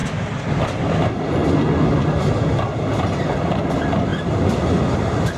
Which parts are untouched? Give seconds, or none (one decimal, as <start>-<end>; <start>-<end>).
0.0-5.4